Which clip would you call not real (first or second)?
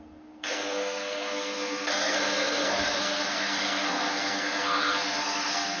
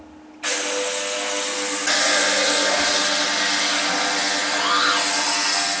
first